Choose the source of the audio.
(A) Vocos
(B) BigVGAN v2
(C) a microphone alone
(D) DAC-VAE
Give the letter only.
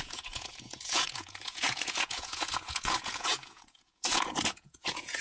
A